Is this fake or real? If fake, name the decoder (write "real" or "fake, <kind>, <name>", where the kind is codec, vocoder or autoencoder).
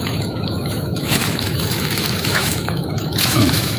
fake, autoencoder, DAC-VAE